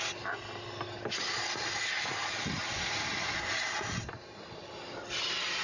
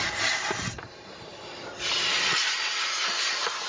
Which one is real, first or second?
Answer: first